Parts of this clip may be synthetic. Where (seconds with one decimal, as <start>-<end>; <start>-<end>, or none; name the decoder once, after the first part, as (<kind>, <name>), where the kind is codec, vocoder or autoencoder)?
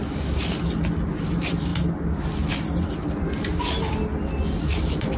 none